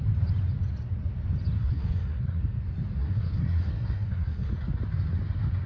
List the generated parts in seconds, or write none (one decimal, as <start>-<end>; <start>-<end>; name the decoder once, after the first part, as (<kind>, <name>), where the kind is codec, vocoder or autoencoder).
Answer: 1.6-2.4 (codec, SNAC); 3.0-4.5